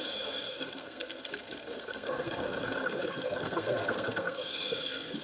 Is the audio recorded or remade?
remade